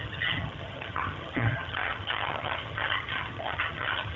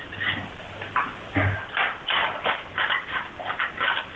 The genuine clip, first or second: second